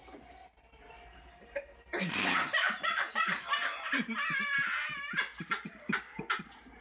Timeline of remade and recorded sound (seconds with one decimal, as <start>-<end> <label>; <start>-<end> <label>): 0.0-3.2 recorded; 3.2-4.9 remade; 4.9-6.2 recorded; 6.2-6.8 remade